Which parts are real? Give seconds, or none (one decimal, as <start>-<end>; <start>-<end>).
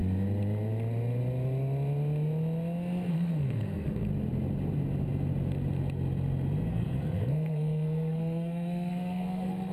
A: 0.0-3.1; 4.1-6.7